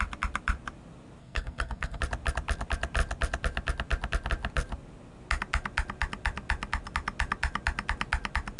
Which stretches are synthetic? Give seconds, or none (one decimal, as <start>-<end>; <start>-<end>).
1.2-2.0